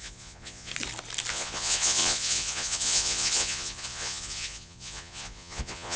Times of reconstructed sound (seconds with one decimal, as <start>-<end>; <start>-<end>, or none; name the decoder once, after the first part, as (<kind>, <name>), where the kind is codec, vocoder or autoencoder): 0.0-0.7 (vocoder, Vocos); 1.3-6.0